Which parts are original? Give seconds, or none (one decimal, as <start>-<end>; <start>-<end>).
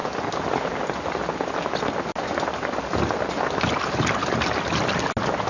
0.0-5.5